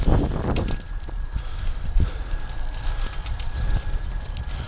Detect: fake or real real